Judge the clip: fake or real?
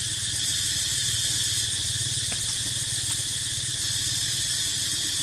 real